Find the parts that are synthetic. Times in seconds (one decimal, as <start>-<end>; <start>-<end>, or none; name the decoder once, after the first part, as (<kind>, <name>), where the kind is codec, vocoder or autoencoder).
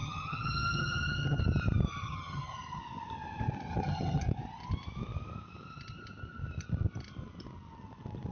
0.0-1.4 (vocoder, HiFi-GAN); 1.9-2.8; 3.7-4.2